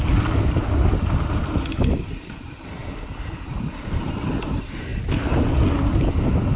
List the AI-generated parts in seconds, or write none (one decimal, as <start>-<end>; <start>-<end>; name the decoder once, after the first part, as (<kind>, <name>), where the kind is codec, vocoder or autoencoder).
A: 0.0-4.9 (vocoder, BigVGAN v2); 5.7-6.6